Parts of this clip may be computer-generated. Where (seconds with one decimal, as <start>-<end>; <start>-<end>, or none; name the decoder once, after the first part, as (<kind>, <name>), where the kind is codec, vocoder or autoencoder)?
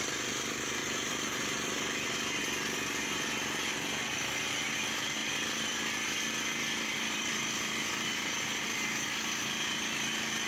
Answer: 0.8-2.4 (vocoder, BigVGAN v2); 5.2-8.4